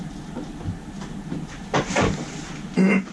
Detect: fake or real real